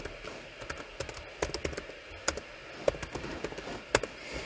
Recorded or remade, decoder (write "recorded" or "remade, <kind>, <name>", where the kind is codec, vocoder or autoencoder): recorded